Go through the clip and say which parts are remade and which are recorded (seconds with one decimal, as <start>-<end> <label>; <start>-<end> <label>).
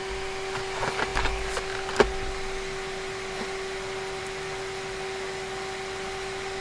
0.0-6.6 recorded